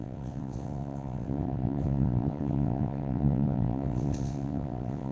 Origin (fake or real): fake